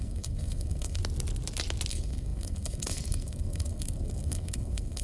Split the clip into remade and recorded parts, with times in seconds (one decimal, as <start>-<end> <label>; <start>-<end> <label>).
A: 0.0-1.0 remade; 1.0-1.9 recorded; 1.9-5.0 remade

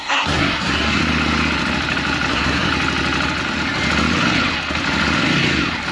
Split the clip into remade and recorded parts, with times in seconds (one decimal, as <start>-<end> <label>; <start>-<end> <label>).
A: 0.0-1.0 remade; 1.0-2.3 recorded; 2.3-2.7 remade; 2.7-5.9 recorded

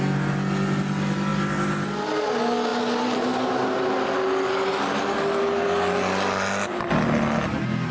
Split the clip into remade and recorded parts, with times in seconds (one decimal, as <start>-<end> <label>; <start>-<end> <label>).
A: 0.0-7.9 recorded

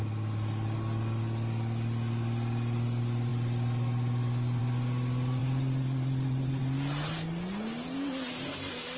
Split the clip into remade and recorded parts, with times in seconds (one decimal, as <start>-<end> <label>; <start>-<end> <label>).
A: 0.0-9.0 recorded

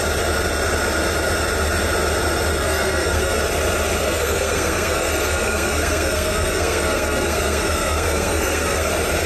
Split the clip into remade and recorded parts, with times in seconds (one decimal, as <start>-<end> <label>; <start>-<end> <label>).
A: 0.0-2.5 recorded; 2.5-3.4 remade; 3.4-4.0 recorded; 4.0-8.9 remade; 8.9-9.3 recorded